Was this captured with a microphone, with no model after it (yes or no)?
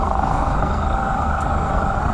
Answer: no